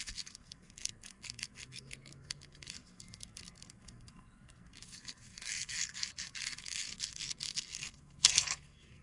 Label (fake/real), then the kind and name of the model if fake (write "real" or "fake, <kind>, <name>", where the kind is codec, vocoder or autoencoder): fake, codec, SNAC